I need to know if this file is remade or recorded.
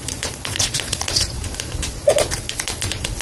remade